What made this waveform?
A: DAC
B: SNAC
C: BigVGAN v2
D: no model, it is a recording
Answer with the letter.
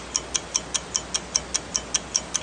D